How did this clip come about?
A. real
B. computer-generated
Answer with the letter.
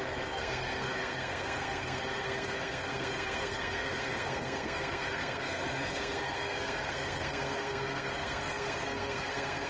B